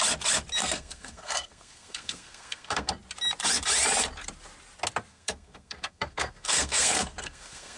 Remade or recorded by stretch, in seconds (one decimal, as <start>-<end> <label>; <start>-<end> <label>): 0.0-0.6 recorded; 0.6-2.9 remade; 2.9-5.1 recorded; 5.1-7.8 remade

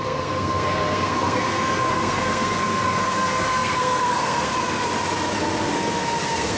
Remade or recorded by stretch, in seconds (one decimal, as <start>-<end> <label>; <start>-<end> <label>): 0.0-4.5 remade; 4.5-5.7 recorded; 5.7-6.6 remade

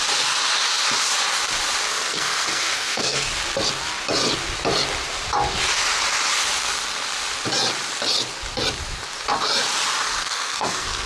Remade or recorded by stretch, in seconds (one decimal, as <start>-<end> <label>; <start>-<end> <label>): 0.0-1.9 recorded; 1.9-3.3 remade; 3.3-10.2 recorded; 10.2-11.1 remade

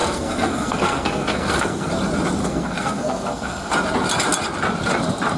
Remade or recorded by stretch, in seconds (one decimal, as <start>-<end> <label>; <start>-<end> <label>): 0.0-1.9 remade; 1.9-2.4 recorded; 2.4-3.7 remade; 3.7-5.4 recorded

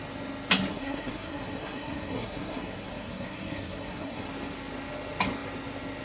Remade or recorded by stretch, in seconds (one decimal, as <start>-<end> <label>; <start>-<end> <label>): 0.0-0.7 recorded; 0.7-4.3 remade; 4.3-6.0 recorded

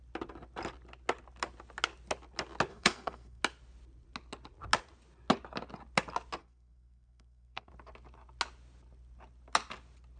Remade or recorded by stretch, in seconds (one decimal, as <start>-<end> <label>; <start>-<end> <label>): 0.0-2.7 recorded; 2.7-3.4 remade; 3.4-6.4 recorded; 6.4-7.7 remade; 7.7-10.2 recorded